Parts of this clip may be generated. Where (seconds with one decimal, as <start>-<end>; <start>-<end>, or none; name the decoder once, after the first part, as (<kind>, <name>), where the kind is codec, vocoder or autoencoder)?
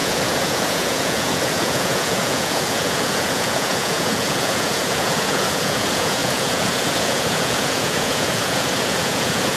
0.0-9.6 (vocoder, Vocos)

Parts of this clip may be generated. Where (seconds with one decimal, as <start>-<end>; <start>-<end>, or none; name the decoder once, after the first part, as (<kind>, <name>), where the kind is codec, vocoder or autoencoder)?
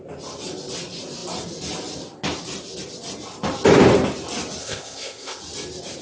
4.6-5.4 (codec, ZipCodec)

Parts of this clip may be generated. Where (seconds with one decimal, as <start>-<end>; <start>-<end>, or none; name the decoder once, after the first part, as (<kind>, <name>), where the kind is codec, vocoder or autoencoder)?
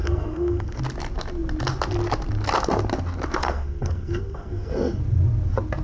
0.0-0.8 (codec, SNAC); 3.4-5.0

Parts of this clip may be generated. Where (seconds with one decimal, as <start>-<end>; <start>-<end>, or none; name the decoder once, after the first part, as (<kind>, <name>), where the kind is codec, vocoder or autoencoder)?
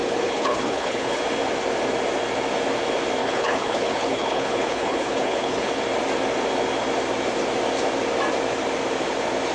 0.0-1.2 (codec, HILCodec); 3.2-5.7